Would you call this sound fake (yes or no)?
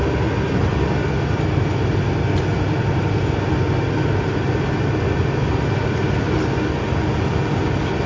no